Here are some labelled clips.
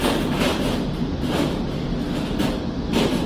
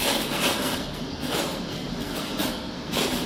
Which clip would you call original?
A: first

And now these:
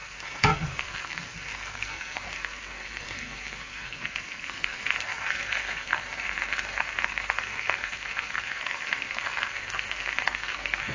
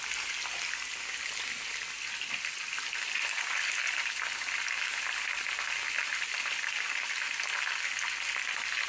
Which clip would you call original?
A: second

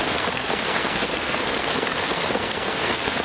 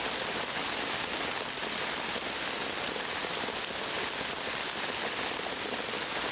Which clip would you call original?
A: second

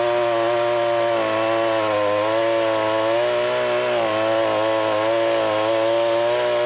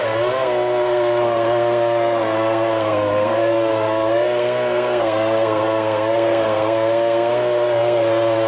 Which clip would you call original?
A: first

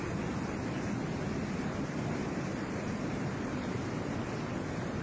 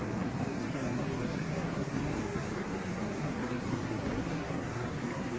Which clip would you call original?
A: first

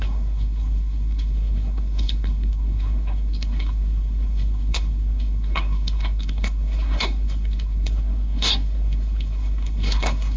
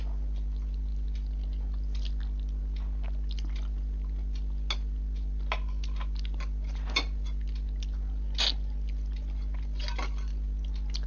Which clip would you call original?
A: second